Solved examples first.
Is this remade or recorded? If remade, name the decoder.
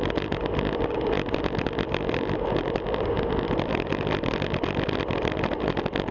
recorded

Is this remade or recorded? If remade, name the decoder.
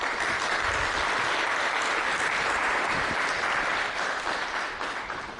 remade, vocoder, BigVGAN v2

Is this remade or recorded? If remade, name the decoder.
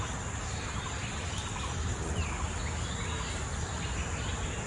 recorded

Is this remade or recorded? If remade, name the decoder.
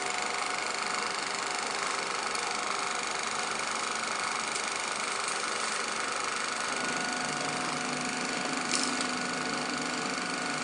recorded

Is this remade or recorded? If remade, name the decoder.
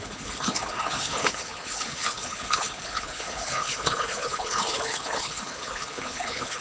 remade, codec, HILCodec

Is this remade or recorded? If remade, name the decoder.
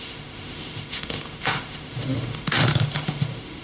remade, autoencoder, DAC-VAE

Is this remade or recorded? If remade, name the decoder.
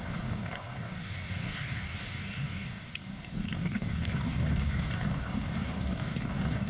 remade, codec, DAC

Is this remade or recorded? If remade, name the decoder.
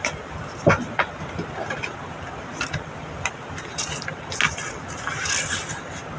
recorded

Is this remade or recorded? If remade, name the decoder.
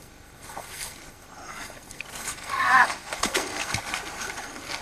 remade, codec, SNAC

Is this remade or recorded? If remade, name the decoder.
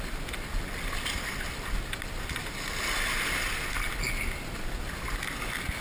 recorded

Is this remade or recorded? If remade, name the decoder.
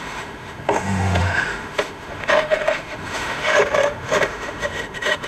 remade, autoencoder, DAC-VAE